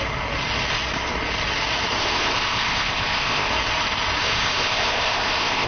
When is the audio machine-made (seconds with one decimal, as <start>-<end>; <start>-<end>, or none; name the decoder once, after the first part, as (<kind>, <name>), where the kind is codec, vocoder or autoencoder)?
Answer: 2.0-3.5 (codec, ZipCodec); 4.2-5.7